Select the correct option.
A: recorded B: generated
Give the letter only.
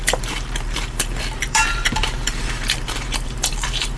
B